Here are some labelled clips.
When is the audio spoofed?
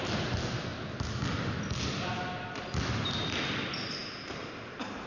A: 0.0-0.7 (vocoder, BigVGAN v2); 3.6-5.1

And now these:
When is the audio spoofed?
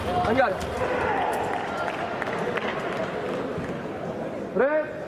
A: none